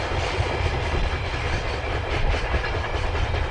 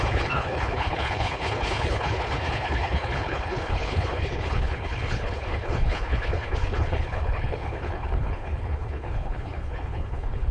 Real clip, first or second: first